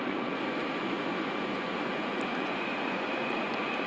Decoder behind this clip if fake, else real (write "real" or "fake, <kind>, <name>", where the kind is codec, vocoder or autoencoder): fake, vocoder, Vocos